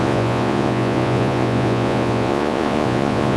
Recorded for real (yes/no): no